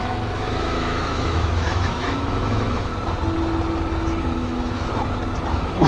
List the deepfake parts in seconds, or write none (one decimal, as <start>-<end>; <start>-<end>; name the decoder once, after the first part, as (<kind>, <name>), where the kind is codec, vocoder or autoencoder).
0.0-2.9 (autoencoder, DAC-VAE); 4.2-4.9; 5.5-5.9